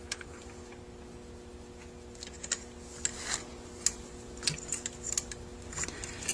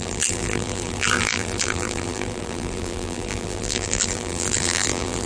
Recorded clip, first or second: first